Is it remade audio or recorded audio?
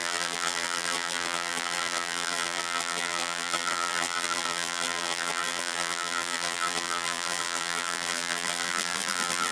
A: remade